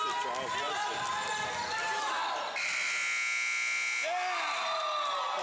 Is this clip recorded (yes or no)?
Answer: yes